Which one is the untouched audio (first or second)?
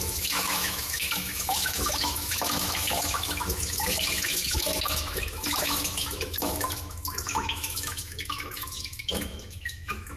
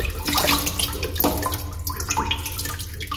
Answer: second